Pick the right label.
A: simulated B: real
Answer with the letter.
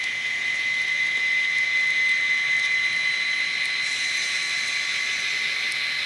B